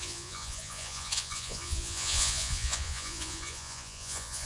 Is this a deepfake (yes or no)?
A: yes